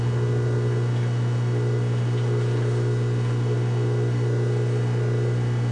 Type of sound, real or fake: real